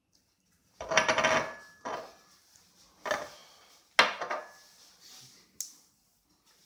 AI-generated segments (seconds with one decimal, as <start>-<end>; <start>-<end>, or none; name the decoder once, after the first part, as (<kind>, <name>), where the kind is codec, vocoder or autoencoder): none